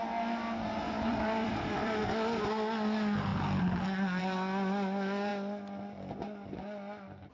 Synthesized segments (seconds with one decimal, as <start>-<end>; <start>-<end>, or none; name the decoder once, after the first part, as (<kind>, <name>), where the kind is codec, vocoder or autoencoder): 1.1-2.0 (vocoder, BigVGAN v2)